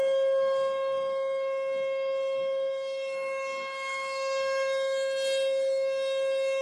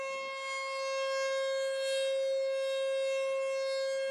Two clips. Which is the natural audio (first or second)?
second